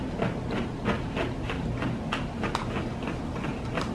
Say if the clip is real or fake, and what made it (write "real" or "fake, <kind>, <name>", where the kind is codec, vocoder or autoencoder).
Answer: real